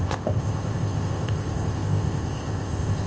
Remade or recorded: remade